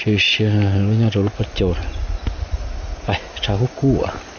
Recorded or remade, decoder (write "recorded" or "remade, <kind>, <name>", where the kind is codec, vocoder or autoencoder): recorded